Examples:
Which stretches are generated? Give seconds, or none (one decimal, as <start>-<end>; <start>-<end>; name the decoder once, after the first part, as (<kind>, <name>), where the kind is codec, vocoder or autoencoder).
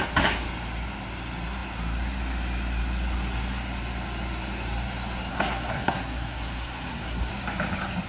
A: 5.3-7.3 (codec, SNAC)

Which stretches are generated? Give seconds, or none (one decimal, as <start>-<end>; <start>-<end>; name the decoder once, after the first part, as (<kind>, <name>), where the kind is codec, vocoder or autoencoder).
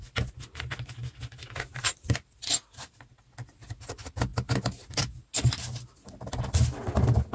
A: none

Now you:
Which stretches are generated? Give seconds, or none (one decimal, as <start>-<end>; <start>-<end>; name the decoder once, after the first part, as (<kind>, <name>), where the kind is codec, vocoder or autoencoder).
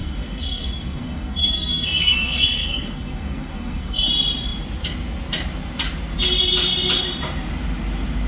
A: 0.0-4.1 (codec, SNAC)